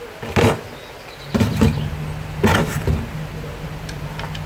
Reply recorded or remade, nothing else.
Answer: recorded